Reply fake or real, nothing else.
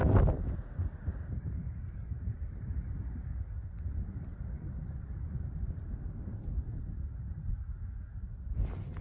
real